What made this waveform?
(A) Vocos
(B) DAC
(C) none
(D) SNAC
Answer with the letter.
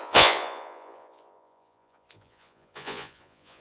A